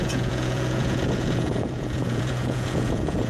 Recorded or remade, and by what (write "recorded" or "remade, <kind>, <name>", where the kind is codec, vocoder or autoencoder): remade, vocoder, Vocos